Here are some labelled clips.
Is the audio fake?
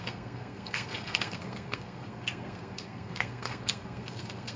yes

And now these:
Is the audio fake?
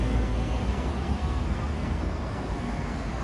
yes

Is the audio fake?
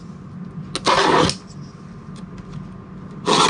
no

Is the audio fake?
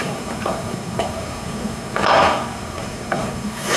yes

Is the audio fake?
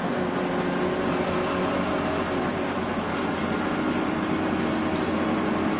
no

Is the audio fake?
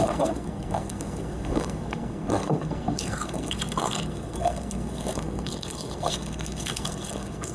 yes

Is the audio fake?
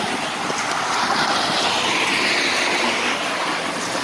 no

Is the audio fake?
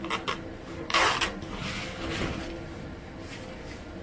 no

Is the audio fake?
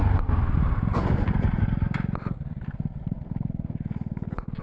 no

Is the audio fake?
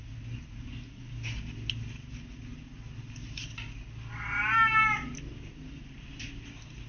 no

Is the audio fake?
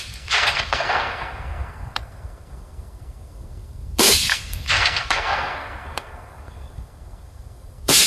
yes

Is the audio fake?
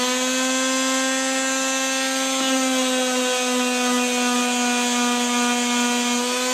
no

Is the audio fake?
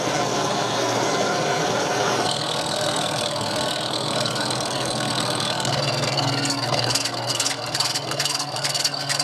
yes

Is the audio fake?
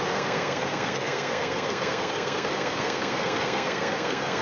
yes